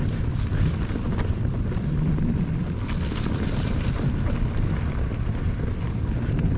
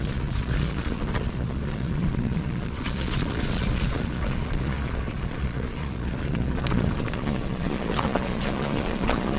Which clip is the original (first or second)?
first